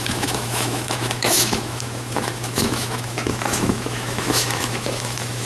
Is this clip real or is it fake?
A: fake